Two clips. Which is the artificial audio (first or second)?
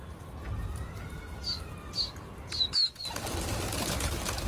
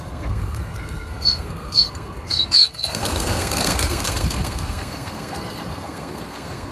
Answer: second